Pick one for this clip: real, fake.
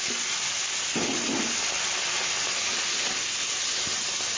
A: real